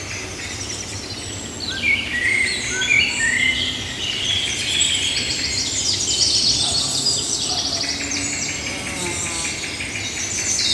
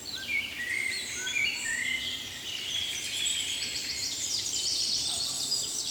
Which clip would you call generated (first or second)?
second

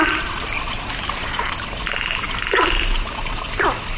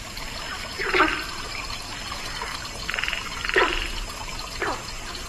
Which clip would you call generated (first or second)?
second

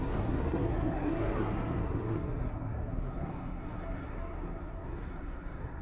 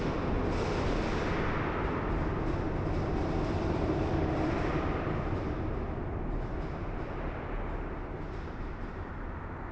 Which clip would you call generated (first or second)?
first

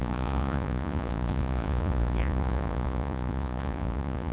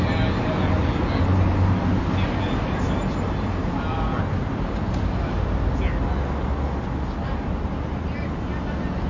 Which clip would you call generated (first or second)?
first